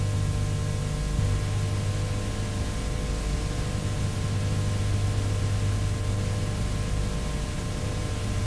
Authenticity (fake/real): real